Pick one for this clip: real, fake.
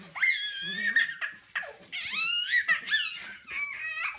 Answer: real